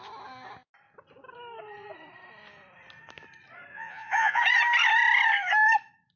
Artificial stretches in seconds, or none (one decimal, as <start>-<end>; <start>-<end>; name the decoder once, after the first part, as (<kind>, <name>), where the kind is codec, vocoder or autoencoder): 3.7-4.4 (vocoder, Vocos)